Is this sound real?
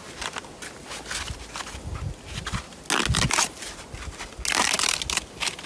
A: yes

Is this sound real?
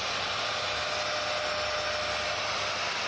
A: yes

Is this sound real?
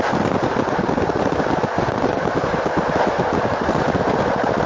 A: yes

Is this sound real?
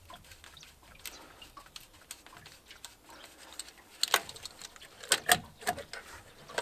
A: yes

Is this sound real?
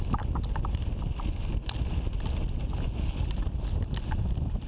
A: yes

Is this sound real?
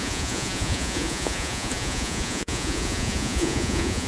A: no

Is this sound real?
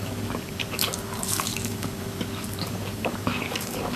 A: no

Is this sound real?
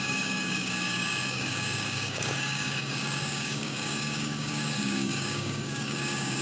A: no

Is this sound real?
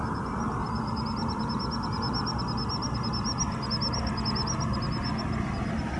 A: yes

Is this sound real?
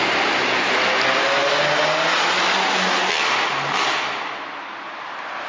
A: yes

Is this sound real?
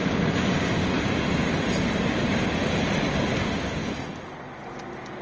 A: yes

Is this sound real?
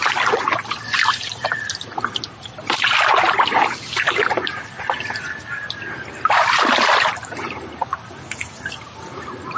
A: yes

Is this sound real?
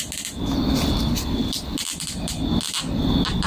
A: yes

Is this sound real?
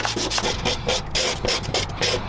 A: yes